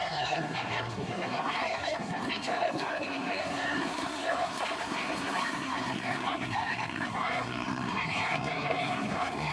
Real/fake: fake